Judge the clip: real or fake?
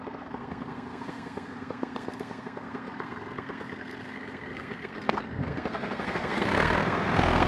fake